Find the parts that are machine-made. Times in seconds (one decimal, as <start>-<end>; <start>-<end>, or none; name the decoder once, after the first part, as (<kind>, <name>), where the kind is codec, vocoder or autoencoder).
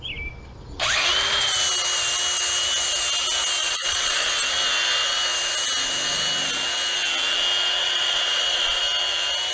3.6-4.3 (vocoder, WaveNeXt); 7.8-8.8